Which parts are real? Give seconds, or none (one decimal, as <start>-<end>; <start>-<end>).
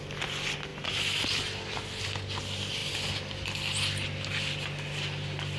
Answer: 0.0-5.6